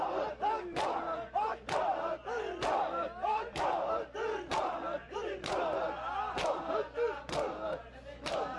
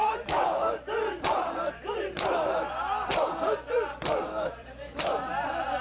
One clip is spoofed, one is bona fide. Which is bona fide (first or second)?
first